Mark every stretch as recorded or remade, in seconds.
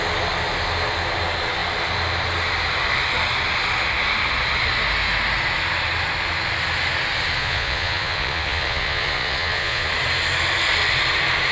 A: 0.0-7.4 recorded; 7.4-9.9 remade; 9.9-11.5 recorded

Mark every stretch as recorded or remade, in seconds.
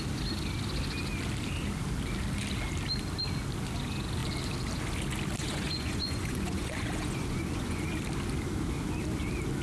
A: 0.0-5.4 recorded; 5.4-7.9 remade; 7.9-9.6 recorded